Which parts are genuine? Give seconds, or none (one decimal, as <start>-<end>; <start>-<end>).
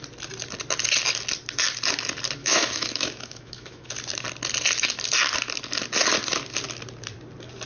0.0-2.4; 3.9-7.7